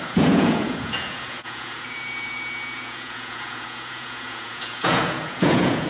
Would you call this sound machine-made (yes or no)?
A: yes